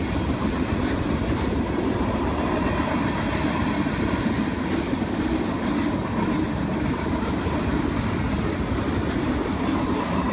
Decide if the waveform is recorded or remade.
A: recorded